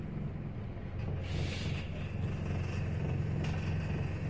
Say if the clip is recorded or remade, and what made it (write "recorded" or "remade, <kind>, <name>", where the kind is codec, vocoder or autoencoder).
recorded